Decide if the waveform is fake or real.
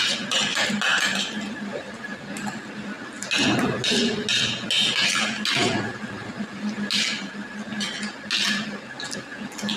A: real